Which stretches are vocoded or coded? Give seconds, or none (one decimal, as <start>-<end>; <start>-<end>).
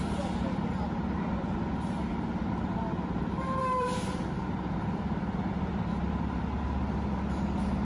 none